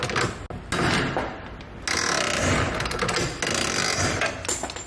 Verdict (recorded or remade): recorded